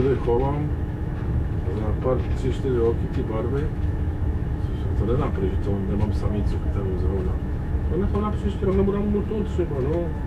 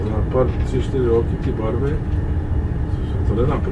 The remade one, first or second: first